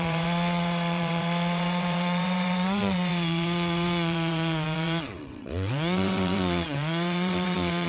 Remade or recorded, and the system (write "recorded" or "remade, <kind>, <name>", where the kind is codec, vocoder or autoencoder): remade, vocoder, WaveNeXt